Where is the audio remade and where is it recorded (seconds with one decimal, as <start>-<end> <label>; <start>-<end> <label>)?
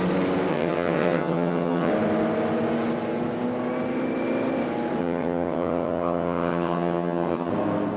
0.0-0.5 recorded; 0.5-1.9 remade; 1.9-5.0 recorded; 5.0-7.5 remade; 7.5-8.0 recorded